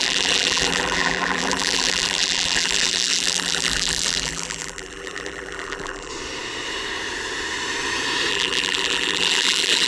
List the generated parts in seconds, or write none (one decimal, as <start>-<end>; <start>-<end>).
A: 0.0-6.1; 8.3-9.9

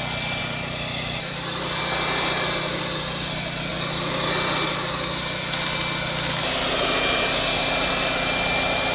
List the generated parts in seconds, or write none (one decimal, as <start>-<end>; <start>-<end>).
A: 0.4-1.8

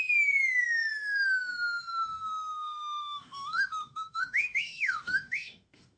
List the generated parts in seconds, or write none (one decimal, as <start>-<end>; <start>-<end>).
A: 2.2-6.0

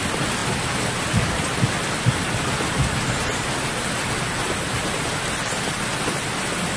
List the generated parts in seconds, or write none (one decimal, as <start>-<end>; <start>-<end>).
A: none

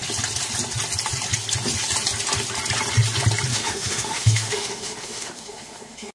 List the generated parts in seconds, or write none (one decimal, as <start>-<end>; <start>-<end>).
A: 3.5-6.1

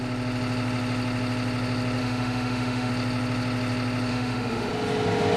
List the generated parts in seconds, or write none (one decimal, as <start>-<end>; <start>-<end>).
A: 2.0-2.9; 4.1-4.7

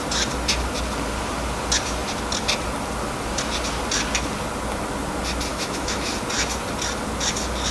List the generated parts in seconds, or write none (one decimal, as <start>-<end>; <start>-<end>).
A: 5.5-6.1